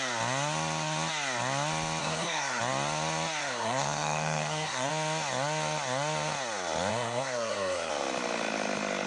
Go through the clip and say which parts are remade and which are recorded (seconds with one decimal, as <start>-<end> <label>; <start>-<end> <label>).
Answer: 0.0-2.0 recorded; 2.0-2.6 remade; 2.6-3.4 recorded; 3.4-4.9 remade; 4.9-6.9 recorded; 6.9-7.9 remade; 7.9-9.1 recorded